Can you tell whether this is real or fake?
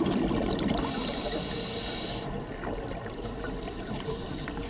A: real